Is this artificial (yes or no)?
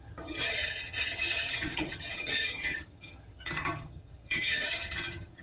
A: yes